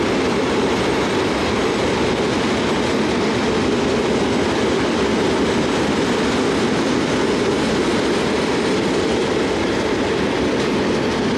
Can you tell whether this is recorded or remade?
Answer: recorded